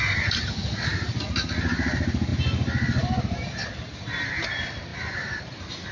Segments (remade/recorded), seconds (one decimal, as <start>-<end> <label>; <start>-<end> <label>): 0.0-4.9 recorded; 4.9-5.4 remade; 5.4-5.9 recorded